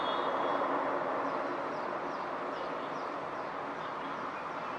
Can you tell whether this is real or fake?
real